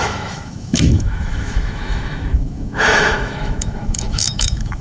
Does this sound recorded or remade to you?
remade